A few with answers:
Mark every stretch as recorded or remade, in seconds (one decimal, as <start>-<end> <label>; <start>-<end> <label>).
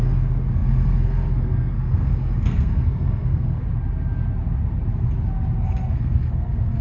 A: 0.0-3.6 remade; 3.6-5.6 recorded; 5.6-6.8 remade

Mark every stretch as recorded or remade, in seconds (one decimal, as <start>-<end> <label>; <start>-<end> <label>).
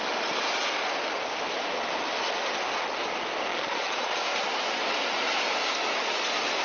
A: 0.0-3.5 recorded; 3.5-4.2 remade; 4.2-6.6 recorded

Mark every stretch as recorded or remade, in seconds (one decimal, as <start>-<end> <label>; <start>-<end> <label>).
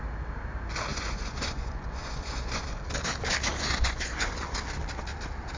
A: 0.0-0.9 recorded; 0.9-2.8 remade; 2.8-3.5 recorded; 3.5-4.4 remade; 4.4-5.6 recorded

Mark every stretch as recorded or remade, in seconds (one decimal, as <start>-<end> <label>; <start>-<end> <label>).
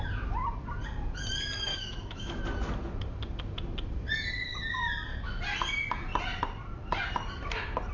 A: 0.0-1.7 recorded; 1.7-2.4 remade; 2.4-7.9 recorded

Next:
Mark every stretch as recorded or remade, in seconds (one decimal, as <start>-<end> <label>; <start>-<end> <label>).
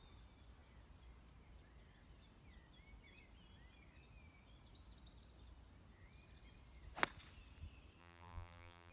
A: 0.0-8.0 recorded; 8.0-8.9 remade